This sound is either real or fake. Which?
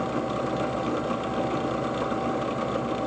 real